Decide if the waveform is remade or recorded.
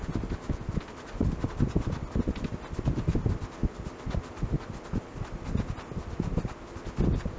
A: recorded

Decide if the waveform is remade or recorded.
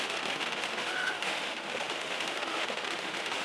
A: remade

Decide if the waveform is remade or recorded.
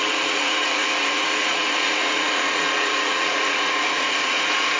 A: remade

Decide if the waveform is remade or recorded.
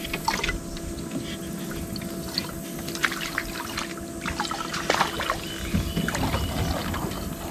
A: recorded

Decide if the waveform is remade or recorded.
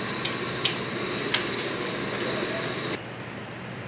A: recorded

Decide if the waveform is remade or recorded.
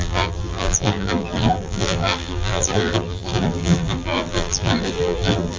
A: remade